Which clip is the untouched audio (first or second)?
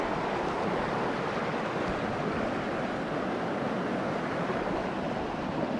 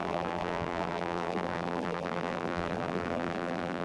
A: first